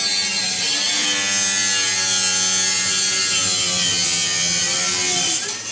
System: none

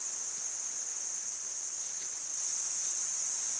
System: none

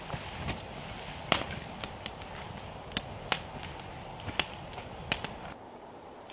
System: none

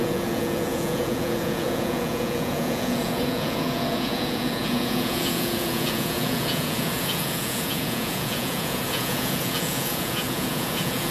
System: vocoder, Vocos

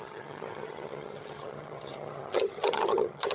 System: vocoder, HiFi-GAN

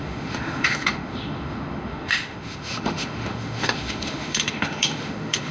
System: autoencoder, DAC-VAE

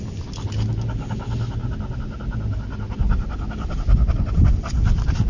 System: none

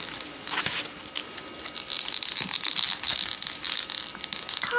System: none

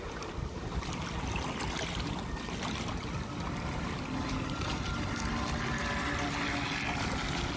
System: none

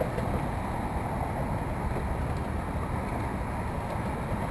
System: none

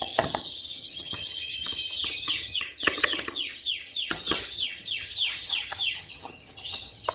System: vocoder, HiFi-GAN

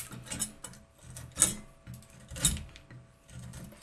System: none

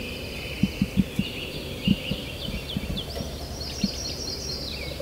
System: vocoder, BigVGAN v2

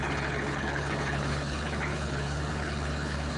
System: codec, HILCodec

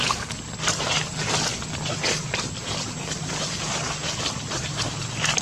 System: none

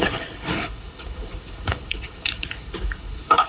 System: codec, HILCodec